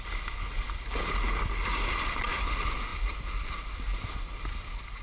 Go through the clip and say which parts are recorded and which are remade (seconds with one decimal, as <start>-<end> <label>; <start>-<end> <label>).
0.0-2.9 recorded; 2.9-3.5 remade; 3.5-5.0 recorded